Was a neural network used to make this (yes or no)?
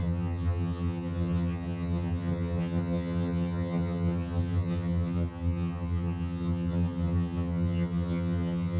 yes